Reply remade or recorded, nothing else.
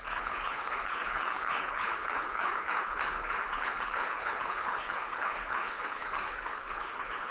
remade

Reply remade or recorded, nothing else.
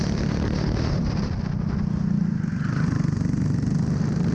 recorded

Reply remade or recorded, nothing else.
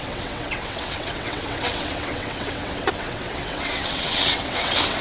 remade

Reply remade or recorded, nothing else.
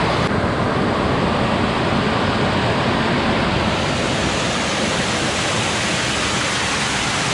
recorded